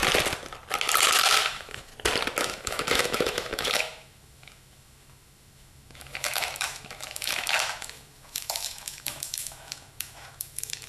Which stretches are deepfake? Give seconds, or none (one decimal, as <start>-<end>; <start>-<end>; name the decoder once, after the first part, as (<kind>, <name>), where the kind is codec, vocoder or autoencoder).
1.5-1.9 (autoencoder, DAC-VAE); 2.4-10.9